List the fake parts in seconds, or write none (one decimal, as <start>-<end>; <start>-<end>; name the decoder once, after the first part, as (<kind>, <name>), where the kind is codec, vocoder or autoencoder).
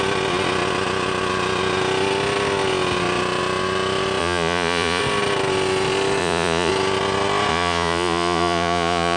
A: 4.2-5.0 (vocoder, Vocos); 6.2-6.7; 7.5-9.2